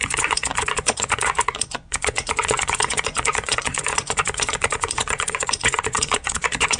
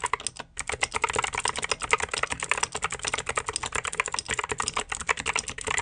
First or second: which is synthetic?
first